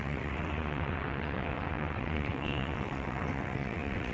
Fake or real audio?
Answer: fake